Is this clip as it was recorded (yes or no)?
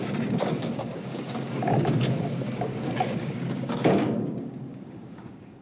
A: no